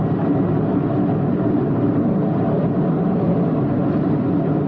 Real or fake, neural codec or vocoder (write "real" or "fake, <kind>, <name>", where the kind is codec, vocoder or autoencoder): real